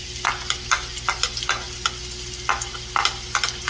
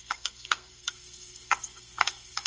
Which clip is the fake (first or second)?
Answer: second